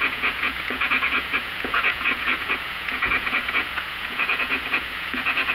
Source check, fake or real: fake